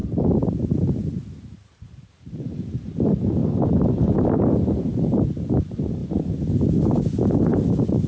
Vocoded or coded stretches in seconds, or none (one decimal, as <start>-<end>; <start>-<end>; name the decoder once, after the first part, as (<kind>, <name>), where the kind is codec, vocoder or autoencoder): 0.0-8.1 (vocoder, BigVGAN v2)